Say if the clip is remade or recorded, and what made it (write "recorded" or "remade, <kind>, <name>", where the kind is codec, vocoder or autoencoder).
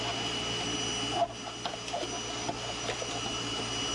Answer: recorded